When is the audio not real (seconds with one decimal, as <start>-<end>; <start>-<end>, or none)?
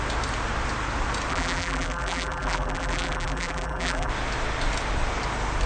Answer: 1.3-4.1